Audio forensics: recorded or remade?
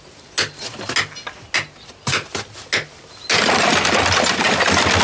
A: recorded